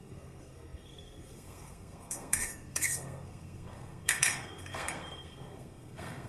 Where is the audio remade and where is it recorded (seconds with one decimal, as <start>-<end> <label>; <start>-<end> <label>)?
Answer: 0.0-6.3 remade